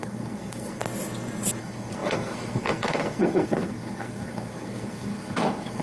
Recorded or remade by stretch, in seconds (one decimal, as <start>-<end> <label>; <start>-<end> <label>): 0.0-0.8 remade; 0.8-1.6 recorded; 1.6-5.8 remade